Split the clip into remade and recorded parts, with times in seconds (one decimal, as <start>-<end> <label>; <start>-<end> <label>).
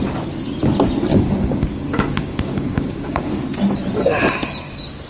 0.0-1.1 recorded; 1.1-3.3 remade; 3.3-5.1 recorded